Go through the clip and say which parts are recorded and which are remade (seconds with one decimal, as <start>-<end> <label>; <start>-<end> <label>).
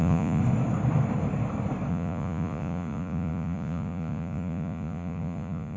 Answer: 0.0-0.4 remade; 0.4-1.9 recorded; 1.9-5.8 remade